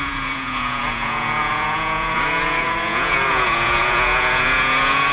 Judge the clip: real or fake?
fake